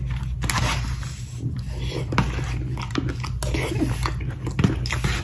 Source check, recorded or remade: recorded